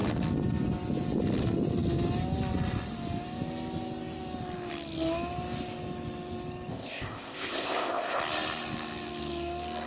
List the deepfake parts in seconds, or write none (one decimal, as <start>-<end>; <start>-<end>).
6.7-8.2